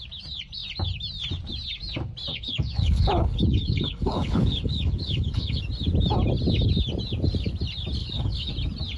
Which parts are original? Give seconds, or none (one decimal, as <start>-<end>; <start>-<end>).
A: 0.0-2.3; 5.6-8.0; 8.5-9.0